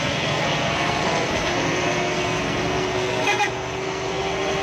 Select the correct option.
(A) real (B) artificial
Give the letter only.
B